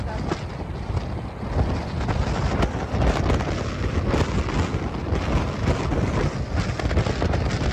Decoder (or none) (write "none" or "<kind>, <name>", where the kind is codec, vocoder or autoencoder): none